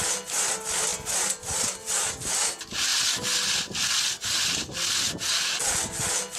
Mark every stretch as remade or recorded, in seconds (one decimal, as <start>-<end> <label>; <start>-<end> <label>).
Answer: 0.0-6.4 recorded